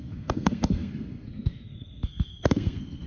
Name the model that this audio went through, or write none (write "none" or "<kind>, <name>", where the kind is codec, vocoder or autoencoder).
codec, SNAC